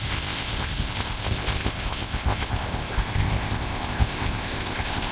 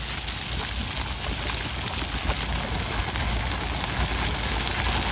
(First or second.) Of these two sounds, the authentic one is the second